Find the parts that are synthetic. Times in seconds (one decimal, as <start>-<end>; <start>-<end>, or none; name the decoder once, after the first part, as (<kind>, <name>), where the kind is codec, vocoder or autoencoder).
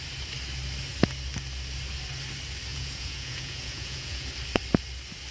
2.7-4.3 (vocoder, Vocos)